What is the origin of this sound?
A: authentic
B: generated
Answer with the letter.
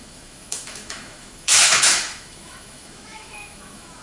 B